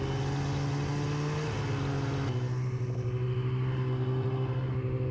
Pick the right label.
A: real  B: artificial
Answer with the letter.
A